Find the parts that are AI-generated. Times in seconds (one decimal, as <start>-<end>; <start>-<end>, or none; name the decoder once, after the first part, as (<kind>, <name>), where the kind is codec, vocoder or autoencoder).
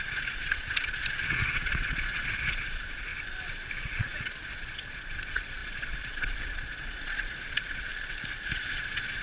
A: 0.0-3.1 (vocoder, Vocos); 3.8-7.9; 8.4-9.2